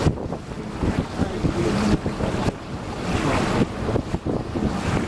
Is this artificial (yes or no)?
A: no